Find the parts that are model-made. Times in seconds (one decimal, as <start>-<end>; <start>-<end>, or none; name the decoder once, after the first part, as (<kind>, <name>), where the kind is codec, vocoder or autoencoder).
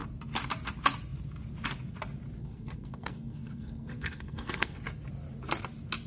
2.4-4.8 (codec, SNAC)